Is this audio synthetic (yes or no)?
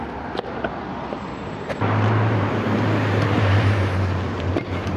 yes